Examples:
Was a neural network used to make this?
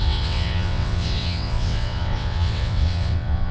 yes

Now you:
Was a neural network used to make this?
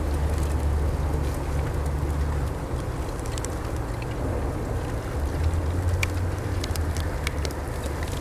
no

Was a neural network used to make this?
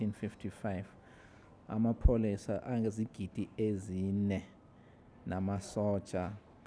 no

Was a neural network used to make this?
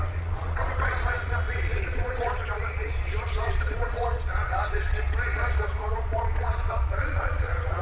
yes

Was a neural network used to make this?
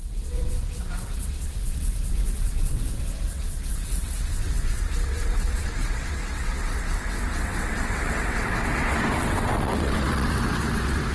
yes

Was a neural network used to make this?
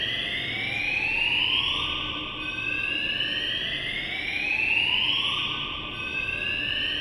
no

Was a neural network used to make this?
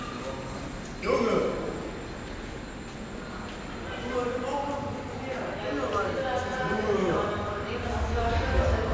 no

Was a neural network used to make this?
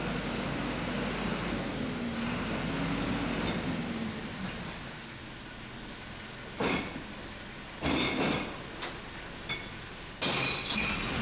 no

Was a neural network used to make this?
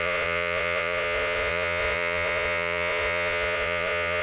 yes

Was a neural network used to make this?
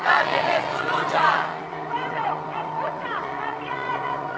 yes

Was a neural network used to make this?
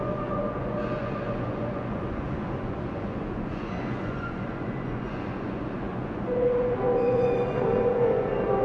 yes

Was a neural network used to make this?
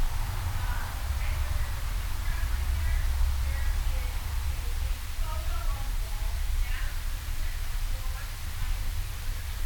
yes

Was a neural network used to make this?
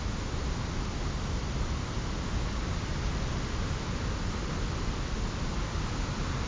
no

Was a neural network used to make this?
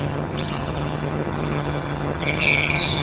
yes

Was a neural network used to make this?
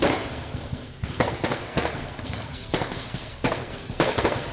yes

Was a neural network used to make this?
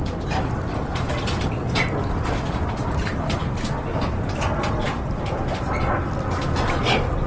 no